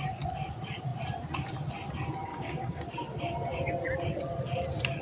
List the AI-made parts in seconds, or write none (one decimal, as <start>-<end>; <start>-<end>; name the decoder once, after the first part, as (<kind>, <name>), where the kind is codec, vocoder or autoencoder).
2.3-2.8 (codec, DAC)